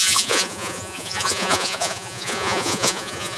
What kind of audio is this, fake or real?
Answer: fake